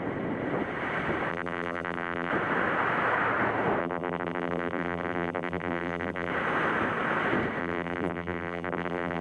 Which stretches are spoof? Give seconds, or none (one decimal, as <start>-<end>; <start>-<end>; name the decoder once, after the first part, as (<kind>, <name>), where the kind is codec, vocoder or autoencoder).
1.3-2.3 (vocoder, BigVGAN v2); 3.8-6.3; 7.6-9.2